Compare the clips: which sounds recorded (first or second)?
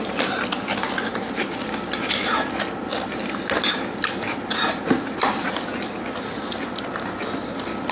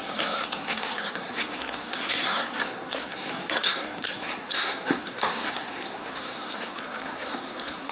first